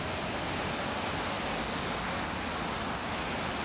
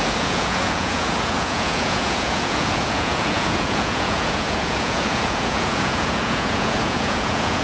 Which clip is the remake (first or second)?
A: second